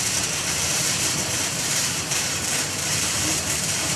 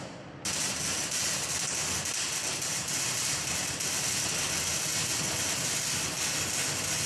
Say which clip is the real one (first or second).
second